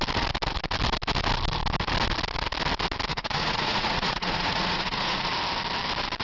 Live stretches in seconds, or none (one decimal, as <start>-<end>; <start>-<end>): 0.0-3.1; 5.3-6.2